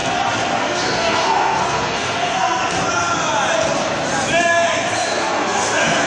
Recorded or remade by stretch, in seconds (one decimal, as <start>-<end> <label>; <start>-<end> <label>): 0.0-0.6 recorded; 0.6-2.6 remade; 2.6-4.9 recorded; 4.9-6.1 remade